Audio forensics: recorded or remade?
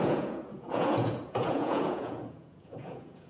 remade